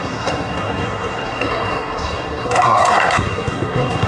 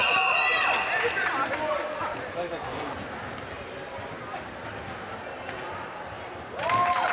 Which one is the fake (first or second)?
first